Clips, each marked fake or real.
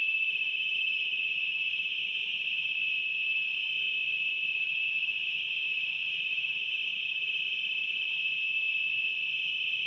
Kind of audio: fake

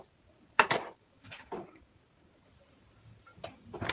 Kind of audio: fake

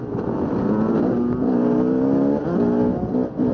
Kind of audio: real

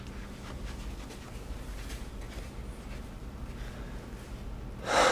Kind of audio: real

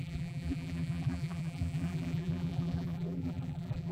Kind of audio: fake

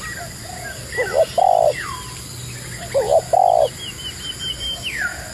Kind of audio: real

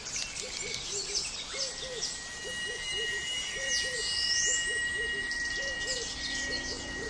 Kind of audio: fake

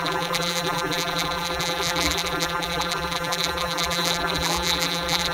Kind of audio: fake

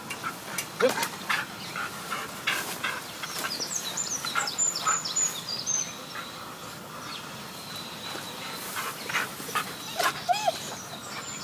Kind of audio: fake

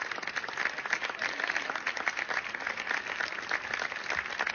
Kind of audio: real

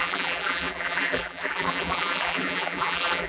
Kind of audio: fake